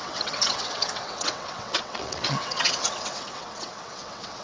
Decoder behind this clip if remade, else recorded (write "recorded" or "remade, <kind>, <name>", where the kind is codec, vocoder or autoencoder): remade, vocoder, WaveNeXt